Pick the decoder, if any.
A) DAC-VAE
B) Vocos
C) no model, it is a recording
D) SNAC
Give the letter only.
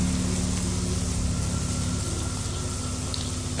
C